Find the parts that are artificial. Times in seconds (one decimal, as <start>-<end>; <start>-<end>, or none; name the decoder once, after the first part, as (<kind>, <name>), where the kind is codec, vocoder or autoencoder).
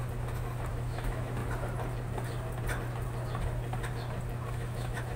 0.7-1.4 (autoencoder, DAC-VAE); 4.5-5.2